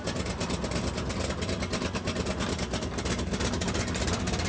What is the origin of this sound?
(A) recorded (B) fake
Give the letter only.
A